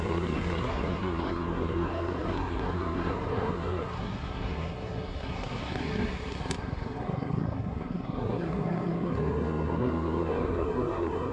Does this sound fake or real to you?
fake